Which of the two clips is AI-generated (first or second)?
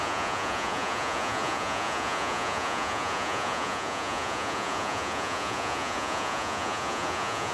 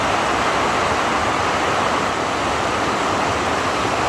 first